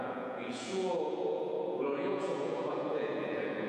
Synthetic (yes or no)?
yes